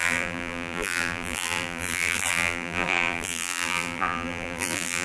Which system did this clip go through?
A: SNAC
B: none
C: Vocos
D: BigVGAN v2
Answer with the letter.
D